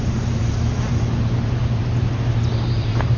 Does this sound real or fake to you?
fake